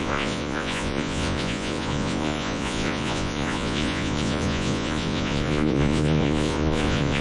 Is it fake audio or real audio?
fake